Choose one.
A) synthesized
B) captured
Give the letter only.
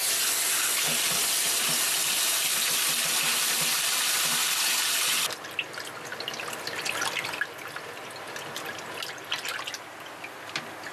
B